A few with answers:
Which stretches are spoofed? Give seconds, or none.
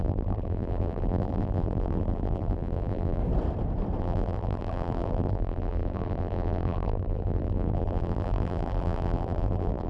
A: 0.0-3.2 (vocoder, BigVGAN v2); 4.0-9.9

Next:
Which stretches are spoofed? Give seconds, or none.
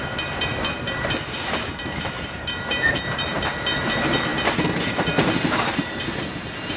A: 0.0-6.8 (vocoder, BigVGAN v2)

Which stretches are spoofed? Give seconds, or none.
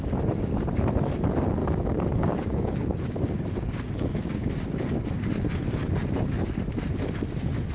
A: 1.6-4.5 (codec, DAC)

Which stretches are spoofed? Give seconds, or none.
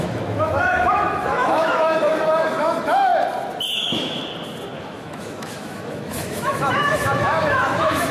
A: 0.0-3.1 (autoencoder, DAC-VAE); 3.7-4.2; 4.8-8.1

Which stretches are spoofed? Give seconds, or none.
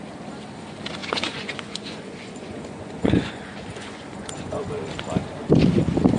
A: 1.0-4.7 (vocoder, Vocos)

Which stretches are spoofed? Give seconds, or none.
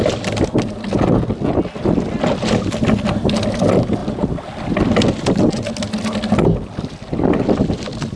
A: none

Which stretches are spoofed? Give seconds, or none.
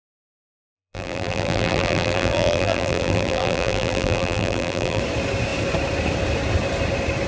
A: 0.6-5.0 (vocoder, BigVGAN v2)